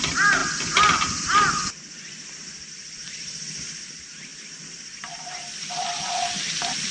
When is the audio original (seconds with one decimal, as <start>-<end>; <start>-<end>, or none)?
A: 0.4-2.7